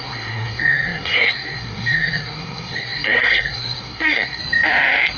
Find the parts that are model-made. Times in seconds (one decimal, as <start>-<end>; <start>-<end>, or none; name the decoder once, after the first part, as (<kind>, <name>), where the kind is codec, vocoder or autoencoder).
0.0-4.4 (codec, SNAC)